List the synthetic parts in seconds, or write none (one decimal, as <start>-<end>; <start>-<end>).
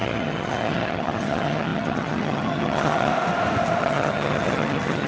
0.0-3.1; 3.8-5.1